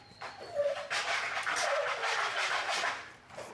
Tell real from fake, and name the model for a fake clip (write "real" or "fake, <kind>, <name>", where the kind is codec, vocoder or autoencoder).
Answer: real